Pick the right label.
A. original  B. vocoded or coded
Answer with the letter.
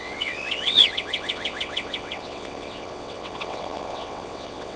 B